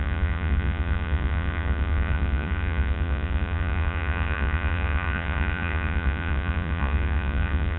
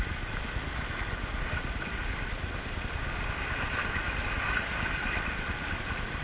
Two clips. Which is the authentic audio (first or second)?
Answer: second